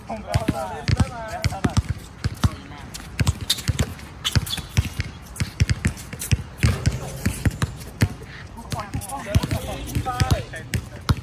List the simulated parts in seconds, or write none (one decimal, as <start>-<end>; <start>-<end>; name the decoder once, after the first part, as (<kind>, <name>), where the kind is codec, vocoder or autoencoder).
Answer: none